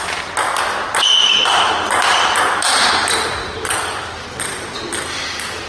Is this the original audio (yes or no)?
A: yes